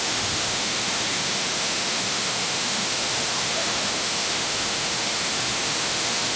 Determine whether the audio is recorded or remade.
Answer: remade